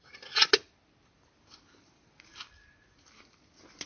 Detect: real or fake real